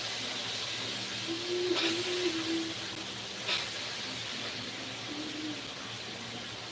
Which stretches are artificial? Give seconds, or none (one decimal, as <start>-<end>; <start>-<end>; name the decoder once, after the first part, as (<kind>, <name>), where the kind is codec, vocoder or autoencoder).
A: none